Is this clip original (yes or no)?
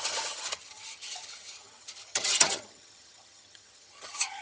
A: no